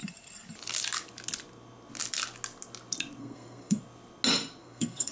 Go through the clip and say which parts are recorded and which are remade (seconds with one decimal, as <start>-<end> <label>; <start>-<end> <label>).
0.0-3.2 recorded; 3.2-3.8 remade; 3.8-4.6 recorded; 4.6-5.1 remade

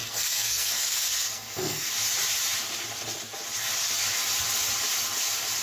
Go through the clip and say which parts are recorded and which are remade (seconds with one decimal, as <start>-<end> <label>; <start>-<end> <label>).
0.0-1.9 remade; 1.9-5.6 recorded

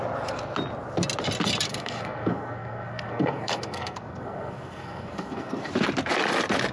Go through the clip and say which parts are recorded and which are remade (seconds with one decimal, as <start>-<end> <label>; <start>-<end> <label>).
0.0-1.7 recorded; 1.7-5.7 remade; 5.7-6.7 recorded

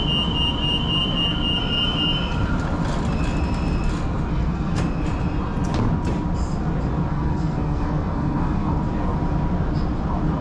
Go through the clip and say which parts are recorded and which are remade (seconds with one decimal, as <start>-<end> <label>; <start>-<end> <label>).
0.0-4.3 recorded; 4.3-4.8 remade; 4.8-7.1 recorded; 7.1-8.8 remade; 8.8-10.4 recorded

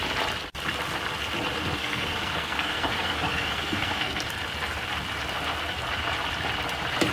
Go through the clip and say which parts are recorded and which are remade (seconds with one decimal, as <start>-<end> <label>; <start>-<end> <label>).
0.0-1.8 recorded; 1.8-4.2 remade; 4.2-7.1 recorded

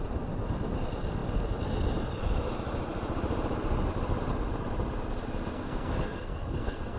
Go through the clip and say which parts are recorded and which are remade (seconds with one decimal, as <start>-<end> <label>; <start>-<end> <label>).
0.0-5.5 recorded; 5.5-7.0 remade

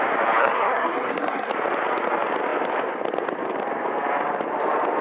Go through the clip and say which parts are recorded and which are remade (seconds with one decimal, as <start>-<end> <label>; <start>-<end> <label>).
0.0-0.4 recorded; 0.4-1.5 remade; 1.5-5.0 recorded